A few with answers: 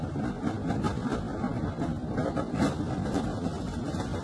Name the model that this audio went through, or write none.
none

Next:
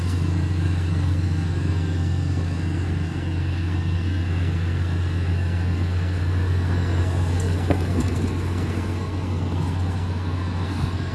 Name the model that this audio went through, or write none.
codec, SNAC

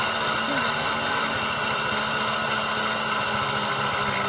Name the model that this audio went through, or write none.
none